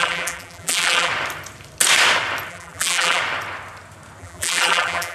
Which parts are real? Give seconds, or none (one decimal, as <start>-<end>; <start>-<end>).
1.1-2.5; 3.2-4.2